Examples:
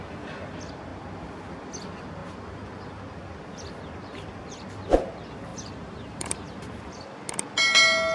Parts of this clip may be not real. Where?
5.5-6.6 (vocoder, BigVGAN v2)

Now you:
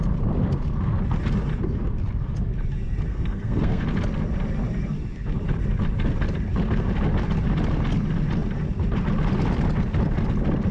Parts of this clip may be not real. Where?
3.1-3.8 (codec, SNAC)

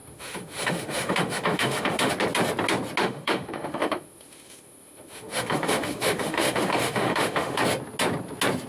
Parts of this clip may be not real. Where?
0.0-2.1 (autoencoder, DAC-VAE); 3.0-7.6